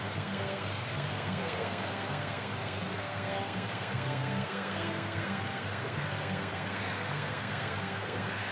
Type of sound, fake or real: fake